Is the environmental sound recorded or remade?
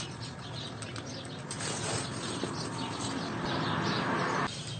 recorded